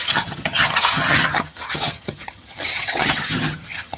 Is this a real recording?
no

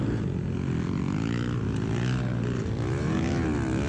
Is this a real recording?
yes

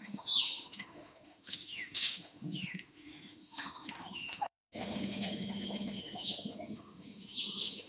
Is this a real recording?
no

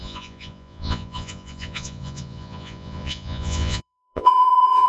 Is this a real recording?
no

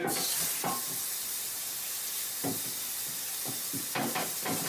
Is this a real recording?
yes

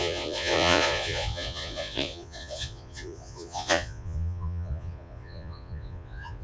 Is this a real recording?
no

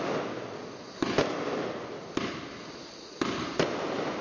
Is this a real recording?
yes